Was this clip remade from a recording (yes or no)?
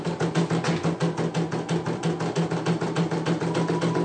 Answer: no